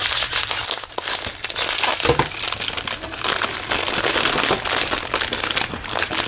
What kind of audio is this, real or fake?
real